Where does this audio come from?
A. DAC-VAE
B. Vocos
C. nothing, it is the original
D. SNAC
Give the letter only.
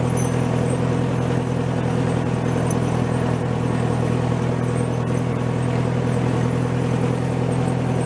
C